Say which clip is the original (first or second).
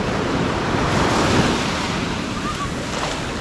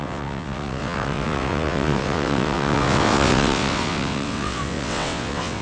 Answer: first